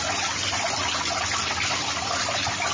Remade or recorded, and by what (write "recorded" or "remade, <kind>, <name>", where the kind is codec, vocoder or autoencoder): recorded